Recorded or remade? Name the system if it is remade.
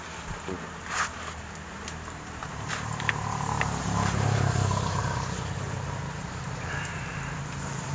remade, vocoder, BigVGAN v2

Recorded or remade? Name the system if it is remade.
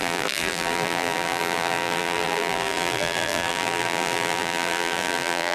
remade, vocoder, BigVGAN v2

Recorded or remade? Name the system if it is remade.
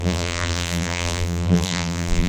remade, vocoder, BigVGAN v2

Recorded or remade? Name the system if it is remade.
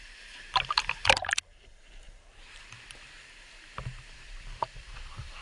remade, vocoder, BigVGAN v2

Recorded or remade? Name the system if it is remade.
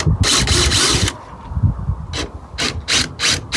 recorded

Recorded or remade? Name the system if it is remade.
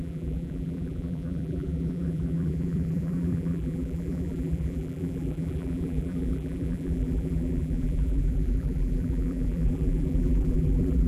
remade, vocoder, BigVGAN v2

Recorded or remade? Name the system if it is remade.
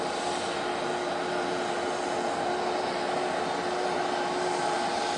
recorded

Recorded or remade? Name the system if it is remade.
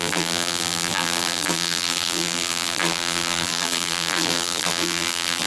remade, vocoder, BigVGAN v2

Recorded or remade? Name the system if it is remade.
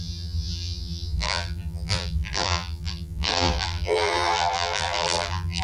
remade, vocoder, BigVGAN v2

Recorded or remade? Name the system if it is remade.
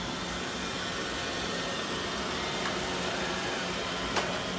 recorded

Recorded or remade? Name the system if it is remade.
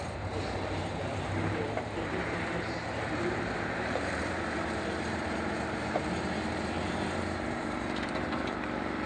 remade, vocoder, BigVGAN v2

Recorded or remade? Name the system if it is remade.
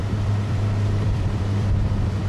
remade, vocoder, BigVGAN v2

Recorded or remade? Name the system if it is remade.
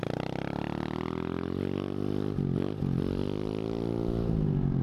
recorded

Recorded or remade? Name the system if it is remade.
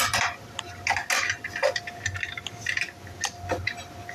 recorded